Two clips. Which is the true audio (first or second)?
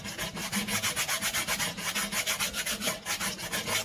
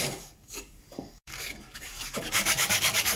first